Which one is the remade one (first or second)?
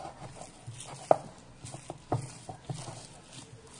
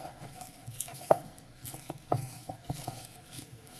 second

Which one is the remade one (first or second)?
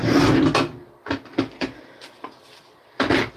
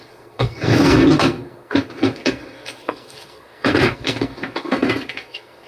second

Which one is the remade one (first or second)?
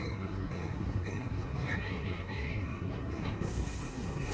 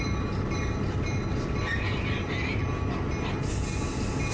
first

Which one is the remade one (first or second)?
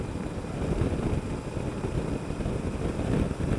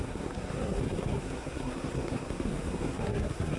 second